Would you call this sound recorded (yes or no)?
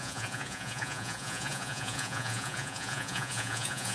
no